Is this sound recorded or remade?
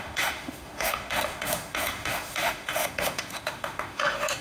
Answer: remade